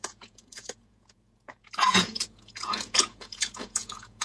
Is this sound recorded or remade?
remade